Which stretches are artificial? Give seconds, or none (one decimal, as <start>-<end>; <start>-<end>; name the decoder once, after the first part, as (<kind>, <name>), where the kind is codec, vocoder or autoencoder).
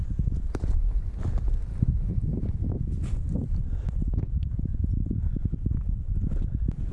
0.0-1.5 (vocoder, BigVGAN v2); 4.8-5.4